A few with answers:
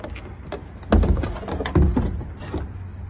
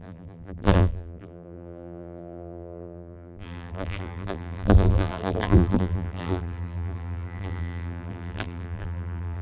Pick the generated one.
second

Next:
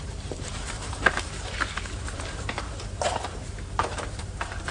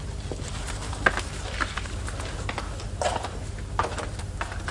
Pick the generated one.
first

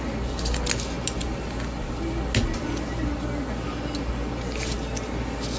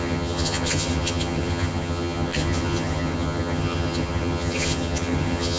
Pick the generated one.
second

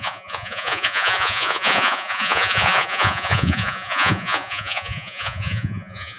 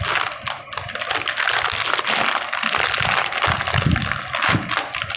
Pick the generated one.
first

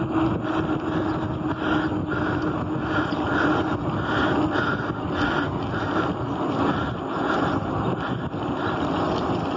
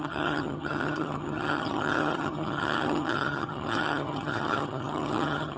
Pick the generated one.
second